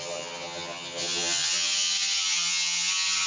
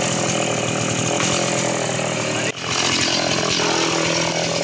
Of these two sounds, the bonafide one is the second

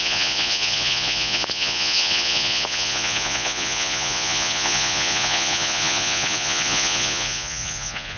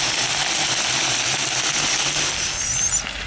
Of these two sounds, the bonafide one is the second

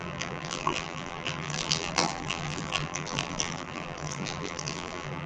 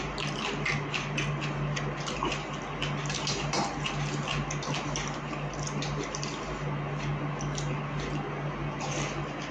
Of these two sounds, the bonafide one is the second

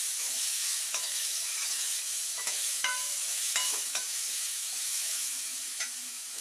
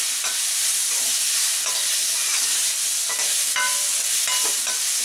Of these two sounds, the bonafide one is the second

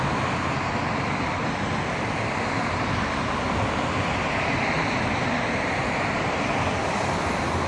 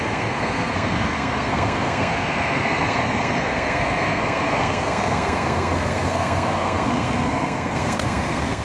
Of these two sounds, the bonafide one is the first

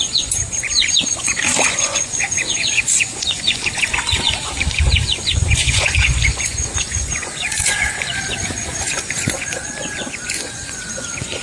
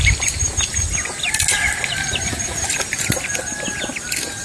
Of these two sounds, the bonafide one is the second